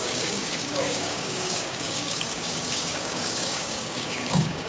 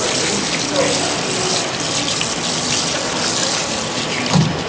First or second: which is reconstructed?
first